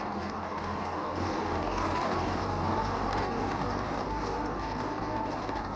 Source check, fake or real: fake